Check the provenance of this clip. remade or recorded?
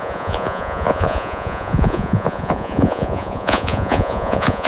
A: remade